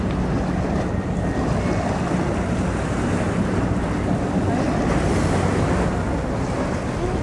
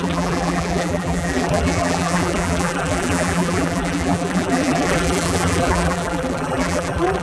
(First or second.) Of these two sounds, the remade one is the second